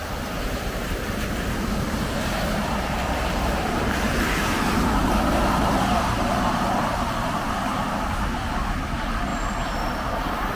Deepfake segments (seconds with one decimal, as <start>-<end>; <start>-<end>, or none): 0.0-9.3; 9.9-10.6